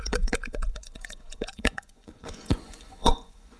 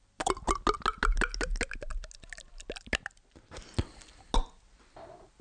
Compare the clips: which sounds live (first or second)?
second